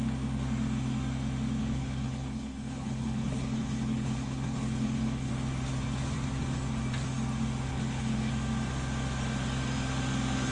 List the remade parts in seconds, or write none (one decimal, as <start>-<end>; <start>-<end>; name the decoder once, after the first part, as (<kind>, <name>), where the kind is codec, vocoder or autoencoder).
1.6-5.3 (codec, HILCodec); 7.7-8.3